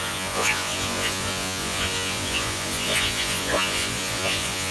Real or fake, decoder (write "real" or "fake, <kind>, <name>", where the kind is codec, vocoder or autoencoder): fake, vocoder, Vocos